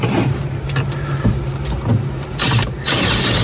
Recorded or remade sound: remade